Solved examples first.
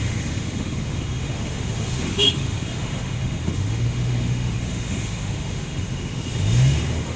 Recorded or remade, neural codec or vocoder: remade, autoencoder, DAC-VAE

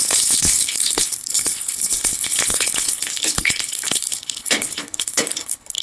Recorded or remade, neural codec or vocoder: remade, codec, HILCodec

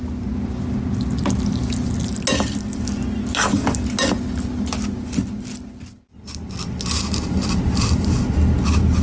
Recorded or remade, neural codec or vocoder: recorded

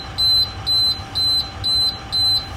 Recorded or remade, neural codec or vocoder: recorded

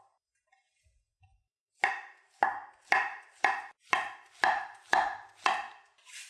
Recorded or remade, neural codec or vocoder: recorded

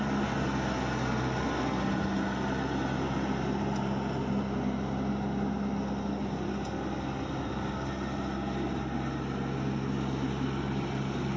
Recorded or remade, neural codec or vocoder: recorded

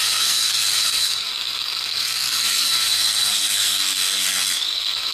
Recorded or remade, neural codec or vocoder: remade, codec, SNAC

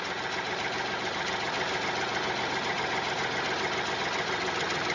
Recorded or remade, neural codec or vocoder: recorded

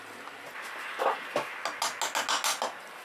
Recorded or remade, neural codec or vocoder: recorded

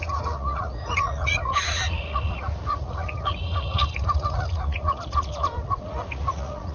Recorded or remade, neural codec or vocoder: remade, vocoder, Vocos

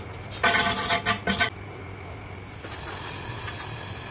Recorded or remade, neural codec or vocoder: recorded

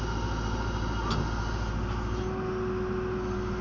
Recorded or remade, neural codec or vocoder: recorded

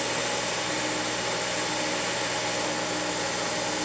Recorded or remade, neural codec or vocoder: recorded